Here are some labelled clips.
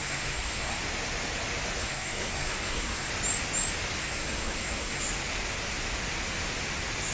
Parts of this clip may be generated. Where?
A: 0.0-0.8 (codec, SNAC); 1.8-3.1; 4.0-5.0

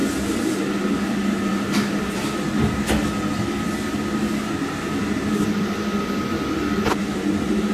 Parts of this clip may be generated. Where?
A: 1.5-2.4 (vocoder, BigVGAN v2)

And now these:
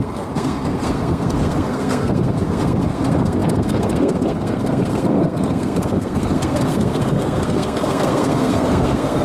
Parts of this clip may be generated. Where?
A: 0.0-9.2 (codec, SNAC)

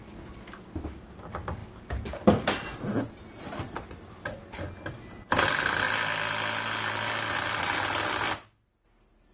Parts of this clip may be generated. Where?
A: none